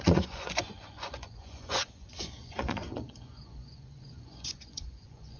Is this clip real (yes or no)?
no